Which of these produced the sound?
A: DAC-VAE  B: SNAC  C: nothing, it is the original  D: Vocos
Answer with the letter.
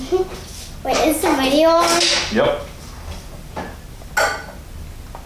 C